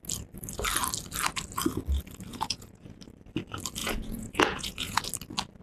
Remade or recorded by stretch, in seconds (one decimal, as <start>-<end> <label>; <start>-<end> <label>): 0.0-2.3 recorded; 2.3-3.0 remade; 3.0-3.8 recorded; 3.8-5.0 remade; 5.0-5.6 recorded

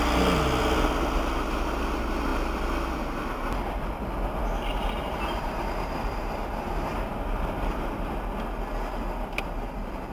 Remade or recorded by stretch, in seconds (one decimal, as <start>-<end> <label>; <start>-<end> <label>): 0.0-4.4 recorded; 4.4-8.1 remade; 8.1-10.1 recorded

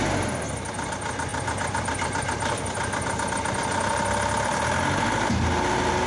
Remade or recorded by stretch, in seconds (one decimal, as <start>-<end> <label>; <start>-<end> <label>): 0.0-6.1 recorded

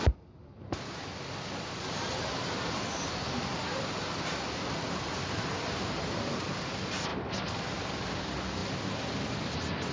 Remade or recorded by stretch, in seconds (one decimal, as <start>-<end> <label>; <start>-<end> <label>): 0.0-9.9 recorded